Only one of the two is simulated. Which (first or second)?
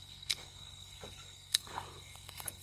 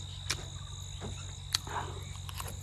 first